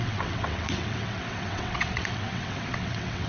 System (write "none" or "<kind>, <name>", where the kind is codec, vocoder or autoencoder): vocoder, WaveNeXt